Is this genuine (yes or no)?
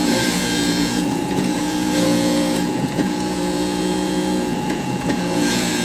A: no